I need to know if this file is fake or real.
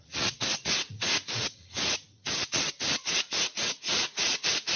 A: fake